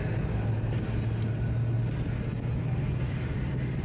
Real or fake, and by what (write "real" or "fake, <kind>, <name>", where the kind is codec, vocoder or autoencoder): real